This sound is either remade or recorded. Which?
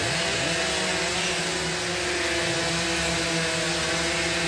recorded